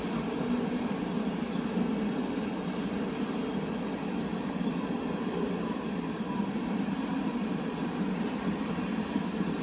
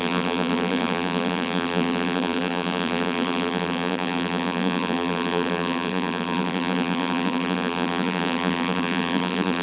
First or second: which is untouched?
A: first